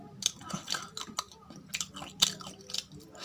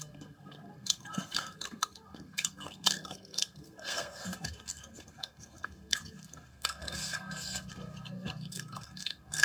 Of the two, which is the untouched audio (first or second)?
first